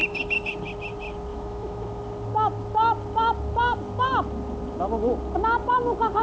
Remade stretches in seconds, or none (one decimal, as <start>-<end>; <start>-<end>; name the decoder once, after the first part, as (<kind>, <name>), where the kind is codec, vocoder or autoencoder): 0.0-0.5 (autoencoder, DAC-VAE); 1.3-2.0

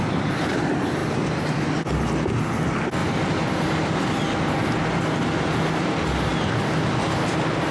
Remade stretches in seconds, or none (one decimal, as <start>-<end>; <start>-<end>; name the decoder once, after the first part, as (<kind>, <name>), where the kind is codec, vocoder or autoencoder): none